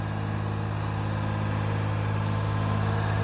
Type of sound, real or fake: real